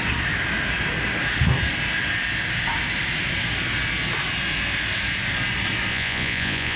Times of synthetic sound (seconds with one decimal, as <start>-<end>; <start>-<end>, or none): 5.9-6.8